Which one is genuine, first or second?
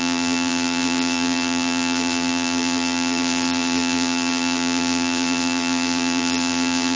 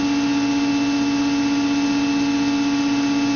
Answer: second